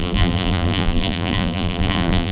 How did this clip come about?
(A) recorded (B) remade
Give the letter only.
B